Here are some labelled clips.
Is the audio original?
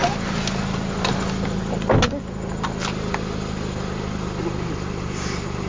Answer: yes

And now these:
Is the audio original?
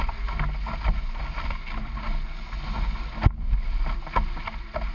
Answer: yes